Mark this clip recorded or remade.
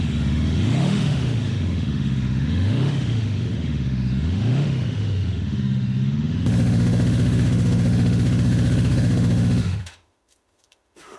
remade